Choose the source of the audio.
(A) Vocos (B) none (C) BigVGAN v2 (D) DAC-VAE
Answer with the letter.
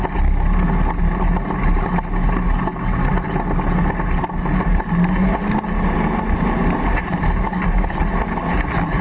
B